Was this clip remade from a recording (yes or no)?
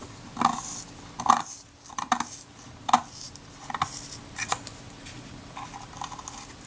no